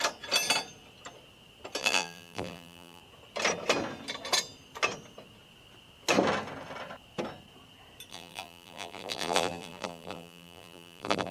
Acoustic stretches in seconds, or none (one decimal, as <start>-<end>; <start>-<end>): 0.0-1.8; 3.0-8.1